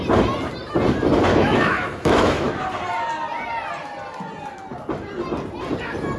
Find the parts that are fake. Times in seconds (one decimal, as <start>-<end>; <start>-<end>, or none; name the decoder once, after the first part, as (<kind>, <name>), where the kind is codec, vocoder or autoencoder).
1.3-2.6 (autoencoder, DAC-VAE)